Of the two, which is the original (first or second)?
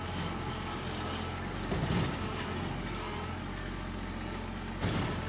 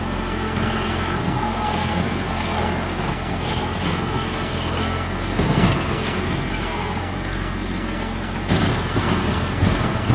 first